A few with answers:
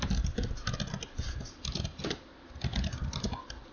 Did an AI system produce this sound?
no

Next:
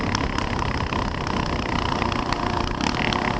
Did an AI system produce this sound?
yes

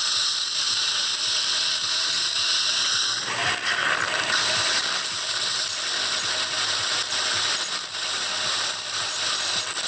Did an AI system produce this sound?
no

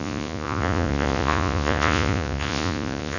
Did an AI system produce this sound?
yes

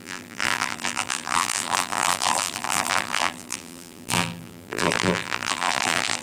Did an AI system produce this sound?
yes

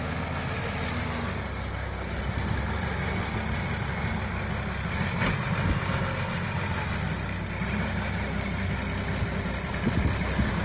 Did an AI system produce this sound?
no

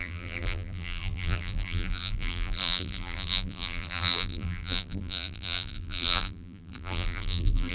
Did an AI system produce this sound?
yes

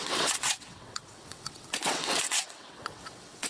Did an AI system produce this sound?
yes